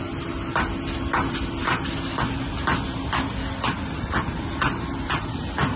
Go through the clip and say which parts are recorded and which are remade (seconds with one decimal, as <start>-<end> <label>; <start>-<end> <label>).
0.0-5.8 recorded

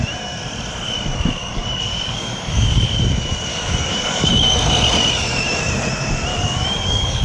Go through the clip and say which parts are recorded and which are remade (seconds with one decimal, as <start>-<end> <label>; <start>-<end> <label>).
0.0-1.4 recorded; 1.4-3.0 remade; 3.0-3.5 recorded; 3.5-4.3 remade; 4.3-6.3 recorded; 6.3-7.2 remade